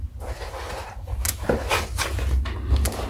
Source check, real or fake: real